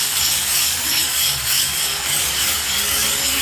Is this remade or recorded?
remade